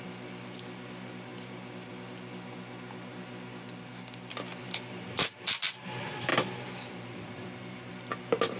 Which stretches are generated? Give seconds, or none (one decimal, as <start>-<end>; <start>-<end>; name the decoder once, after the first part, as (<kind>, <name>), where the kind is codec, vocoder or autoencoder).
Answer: 6.3-7.9 (vocoder, BigVGAN v2)

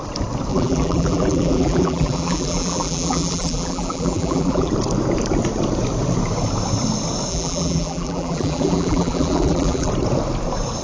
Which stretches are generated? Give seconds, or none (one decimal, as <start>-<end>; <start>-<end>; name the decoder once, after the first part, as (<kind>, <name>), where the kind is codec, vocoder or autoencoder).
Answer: 0.5-4.7 (vocoder, BigVGAN v2); 7.3-9.9

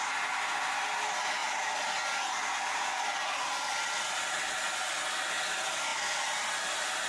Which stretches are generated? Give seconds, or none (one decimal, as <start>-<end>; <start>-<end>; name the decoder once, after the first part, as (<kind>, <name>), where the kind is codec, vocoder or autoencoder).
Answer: none

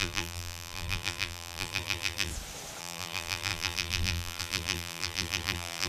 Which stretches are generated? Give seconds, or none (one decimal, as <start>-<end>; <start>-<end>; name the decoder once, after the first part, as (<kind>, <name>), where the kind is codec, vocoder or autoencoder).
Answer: 0.0-2.3 (vocoder, BigVGAN v2); 2.8-5.9

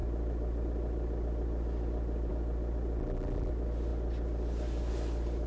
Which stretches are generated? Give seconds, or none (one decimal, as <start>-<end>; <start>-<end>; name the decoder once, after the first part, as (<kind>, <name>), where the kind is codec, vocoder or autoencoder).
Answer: 3.0-3.5 (vocoder, BigVGAN v2)

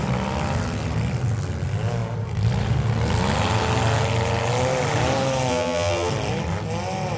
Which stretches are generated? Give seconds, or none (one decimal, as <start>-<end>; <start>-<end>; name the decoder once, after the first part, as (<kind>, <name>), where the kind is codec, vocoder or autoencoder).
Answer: 5.5-6.1 (vocoder, BigVGAN v2)